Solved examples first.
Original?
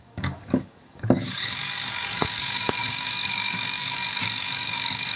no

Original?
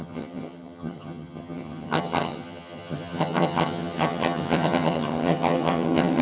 no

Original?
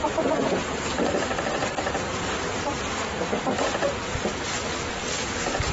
yes